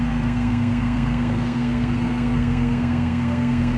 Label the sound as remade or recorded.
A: remade